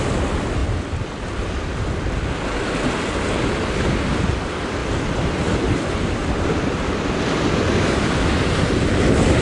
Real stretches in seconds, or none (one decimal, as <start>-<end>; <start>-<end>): 0.0-9.4